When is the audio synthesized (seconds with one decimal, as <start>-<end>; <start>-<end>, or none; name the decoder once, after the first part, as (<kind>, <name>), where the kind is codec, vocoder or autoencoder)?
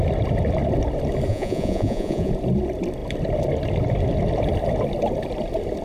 1.3-2.3 (vocoder, Vocos)